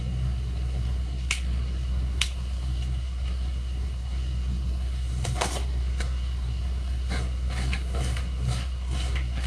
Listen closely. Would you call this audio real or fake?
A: fake